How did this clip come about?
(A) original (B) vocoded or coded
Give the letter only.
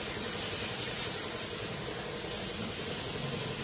A